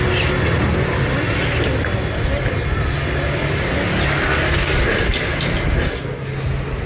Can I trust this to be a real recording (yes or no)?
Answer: yes